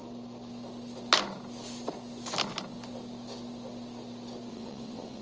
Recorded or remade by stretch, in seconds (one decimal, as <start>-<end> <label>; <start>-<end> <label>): 0.0-4.5 recorded; 4.5-5.2 remade